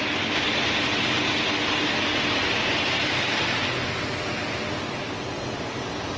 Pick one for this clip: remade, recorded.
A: recorded